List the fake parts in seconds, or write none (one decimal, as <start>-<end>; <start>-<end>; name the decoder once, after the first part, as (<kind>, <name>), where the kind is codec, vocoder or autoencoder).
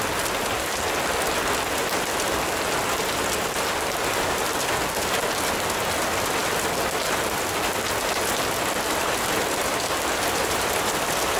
9.0-11.4 (vocoder, BigVGAN v2)